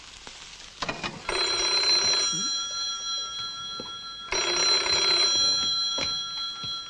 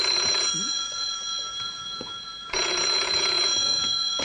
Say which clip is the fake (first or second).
second